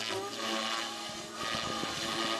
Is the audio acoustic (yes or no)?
yes